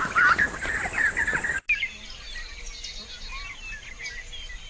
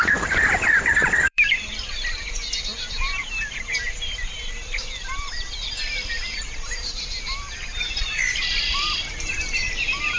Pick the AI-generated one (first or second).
second